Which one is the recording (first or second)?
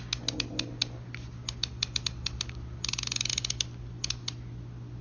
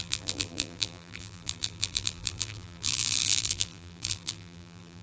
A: first